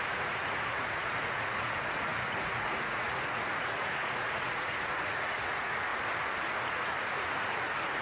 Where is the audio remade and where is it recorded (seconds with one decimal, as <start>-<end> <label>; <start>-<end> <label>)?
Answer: 0.0-5.9 remade; 5.9-6.4 recorded; 6.4-8.0 remade